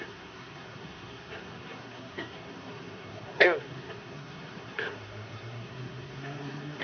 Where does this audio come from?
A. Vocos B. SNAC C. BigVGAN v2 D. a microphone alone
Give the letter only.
B